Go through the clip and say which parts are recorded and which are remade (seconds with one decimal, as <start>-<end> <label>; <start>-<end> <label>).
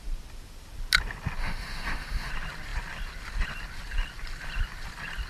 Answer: 0.0-1.4 recorded; 1.4-2.3 remade; 2.3-5.3 recorded